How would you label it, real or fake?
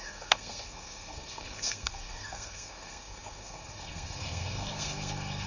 fake